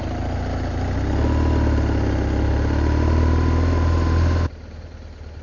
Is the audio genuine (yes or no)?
yes